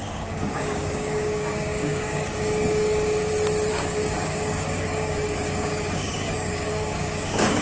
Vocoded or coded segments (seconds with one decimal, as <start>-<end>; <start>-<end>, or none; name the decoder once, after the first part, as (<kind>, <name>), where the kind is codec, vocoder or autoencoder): 0.0-3.3 (codec, DAC); 3.7-7.6